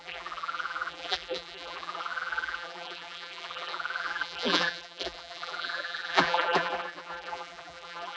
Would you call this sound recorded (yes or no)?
no